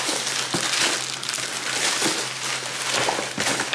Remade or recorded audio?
recorded